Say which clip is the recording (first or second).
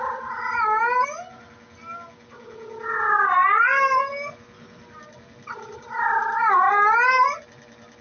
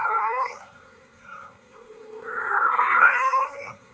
first